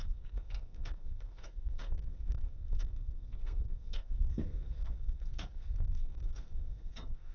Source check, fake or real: fake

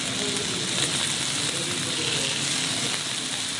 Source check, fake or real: real